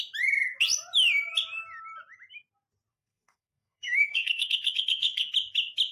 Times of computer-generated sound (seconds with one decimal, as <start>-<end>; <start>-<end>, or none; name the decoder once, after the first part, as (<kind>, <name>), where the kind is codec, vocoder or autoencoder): 2.9-5.3 (codec, SNAC)

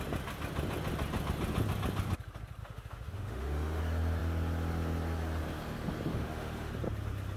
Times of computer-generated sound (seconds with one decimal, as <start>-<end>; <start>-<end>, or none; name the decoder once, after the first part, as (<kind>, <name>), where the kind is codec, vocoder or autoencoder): 2.6-3.8 (autoencoder, DAC-VAE); 6.1-6.7

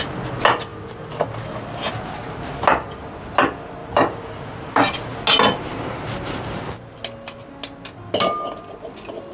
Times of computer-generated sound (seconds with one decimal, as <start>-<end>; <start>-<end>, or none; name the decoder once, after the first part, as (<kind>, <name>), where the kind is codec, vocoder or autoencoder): 3.8-5.0 (vocoder, BigVGAN v2); 5.7-6.9

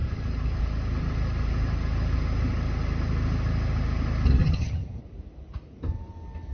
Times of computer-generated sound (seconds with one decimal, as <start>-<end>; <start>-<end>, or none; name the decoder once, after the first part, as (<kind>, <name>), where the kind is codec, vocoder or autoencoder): 4.4-5.0 (vocoder, HiFi-GAN)

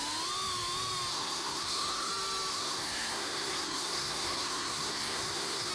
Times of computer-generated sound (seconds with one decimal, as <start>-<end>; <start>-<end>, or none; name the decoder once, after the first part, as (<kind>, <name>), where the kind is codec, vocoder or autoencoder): 1.1-2.1 (codec, SNAC); 2.5-5.7

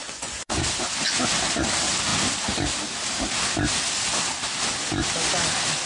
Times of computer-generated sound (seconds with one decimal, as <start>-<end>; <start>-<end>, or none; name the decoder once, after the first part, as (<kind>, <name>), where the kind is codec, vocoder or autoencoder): 0.0-0.6 (vocoder, Vocos)

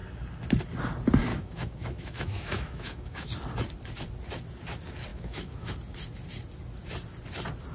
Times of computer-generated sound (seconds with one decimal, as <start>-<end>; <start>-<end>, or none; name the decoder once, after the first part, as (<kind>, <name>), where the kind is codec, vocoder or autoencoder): 1.3-3.3 (autoencoder, DAC-VAE); 5.1-5.7